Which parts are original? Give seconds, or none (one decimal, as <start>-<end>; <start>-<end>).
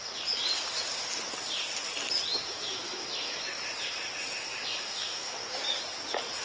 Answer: 0.0-2.3; 3.4-4.5; 5.4-6.4